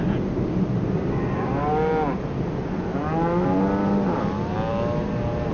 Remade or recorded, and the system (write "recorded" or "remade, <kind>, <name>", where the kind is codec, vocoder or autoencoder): recorded